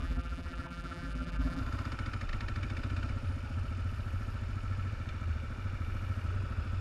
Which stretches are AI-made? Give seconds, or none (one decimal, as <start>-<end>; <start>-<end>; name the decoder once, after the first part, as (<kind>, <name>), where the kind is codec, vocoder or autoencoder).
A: 0.0-1.6 (vocoder, BigVGAN v2)